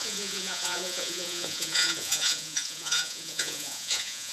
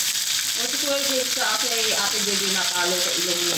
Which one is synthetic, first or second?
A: first